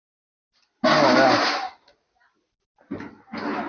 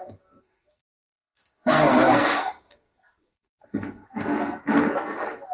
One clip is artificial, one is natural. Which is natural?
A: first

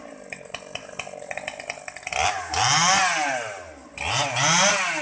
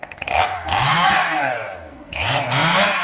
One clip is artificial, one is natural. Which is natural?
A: first